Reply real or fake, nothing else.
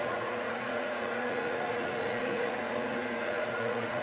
fake